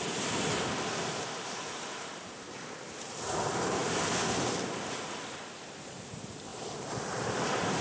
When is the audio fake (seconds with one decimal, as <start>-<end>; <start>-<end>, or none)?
3.8-4.8; 6.5-7.1